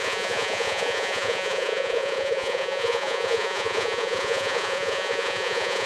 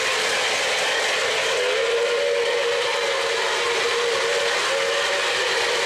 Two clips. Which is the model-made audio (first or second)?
first